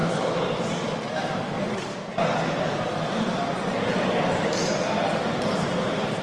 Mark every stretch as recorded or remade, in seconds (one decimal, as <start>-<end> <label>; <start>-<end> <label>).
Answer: 0.0-3.3 recorded; 3.3-5.1 remade; 5.1-6.2 recorded